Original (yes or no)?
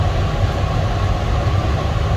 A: yes